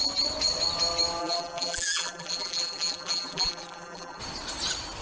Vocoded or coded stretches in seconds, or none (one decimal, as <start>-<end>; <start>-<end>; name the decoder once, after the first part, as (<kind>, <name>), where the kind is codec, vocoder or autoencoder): 1.2-4.2 (vocoder, BigVGAN v2)